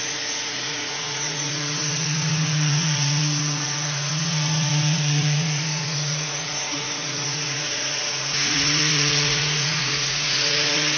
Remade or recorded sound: remade